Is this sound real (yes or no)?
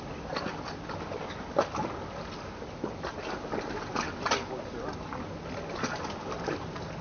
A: yes